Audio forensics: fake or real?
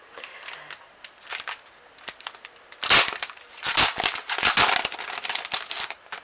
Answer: real